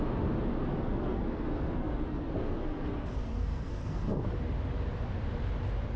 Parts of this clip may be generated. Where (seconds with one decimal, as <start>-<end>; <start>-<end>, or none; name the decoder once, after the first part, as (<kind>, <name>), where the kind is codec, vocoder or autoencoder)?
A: 0.7-4.3 (codec, SNAC)